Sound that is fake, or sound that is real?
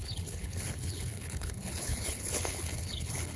fake